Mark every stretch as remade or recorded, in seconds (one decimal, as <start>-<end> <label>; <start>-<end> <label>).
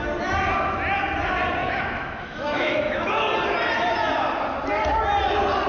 0.0-1.6 recorded; 1.6-3.1 remade; 3.1-5.7 recorded